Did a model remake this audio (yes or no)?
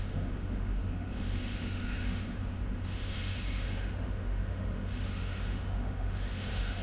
yes